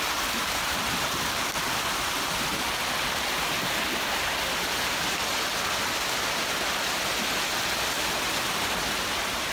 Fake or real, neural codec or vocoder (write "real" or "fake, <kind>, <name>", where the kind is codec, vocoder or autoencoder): real